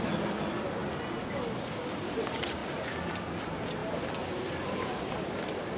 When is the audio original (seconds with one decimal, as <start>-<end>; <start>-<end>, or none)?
0.8-1.9; 2.6-3.1; 3.8-4.3